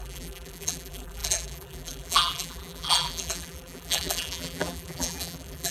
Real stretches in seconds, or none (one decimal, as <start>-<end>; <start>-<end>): none